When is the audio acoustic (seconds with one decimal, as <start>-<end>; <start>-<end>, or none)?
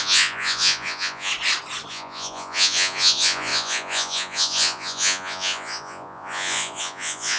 1.3-1.9